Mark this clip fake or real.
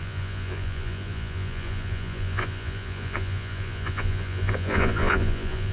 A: fake